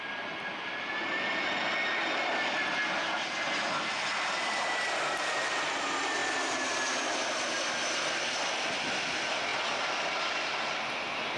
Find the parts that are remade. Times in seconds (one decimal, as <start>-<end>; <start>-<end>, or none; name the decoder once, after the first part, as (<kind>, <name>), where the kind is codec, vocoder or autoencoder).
none